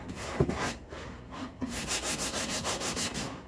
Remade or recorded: remade